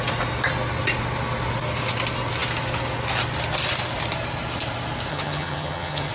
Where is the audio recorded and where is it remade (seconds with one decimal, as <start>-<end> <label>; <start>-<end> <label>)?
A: 0.0-5.1 recorded; 5.1-6.1 remade